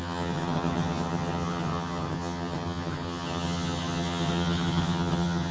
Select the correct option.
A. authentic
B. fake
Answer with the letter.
B